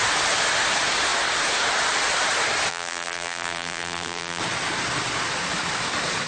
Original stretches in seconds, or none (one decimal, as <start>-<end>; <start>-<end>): 0.0-2.7; 4.4-6.3